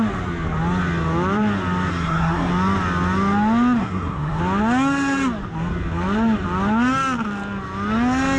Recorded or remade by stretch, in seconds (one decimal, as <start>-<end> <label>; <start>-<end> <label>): 0.0-1.9 recorded; 1.9-2.5 remade; 2.5-3.8 recorded; 3.8-4.4 remade; 4.4-8.4 recorded